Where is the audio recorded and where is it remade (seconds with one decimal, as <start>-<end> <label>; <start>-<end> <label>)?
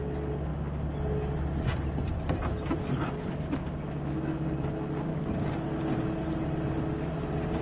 0.0-7.6 recorded